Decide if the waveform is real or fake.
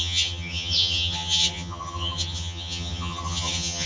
fake